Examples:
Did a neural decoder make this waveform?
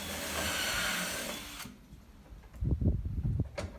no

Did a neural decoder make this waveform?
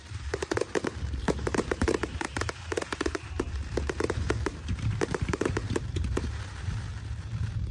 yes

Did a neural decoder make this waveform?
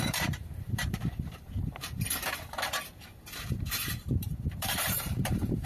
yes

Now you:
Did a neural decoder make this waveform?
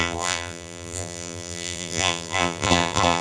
yes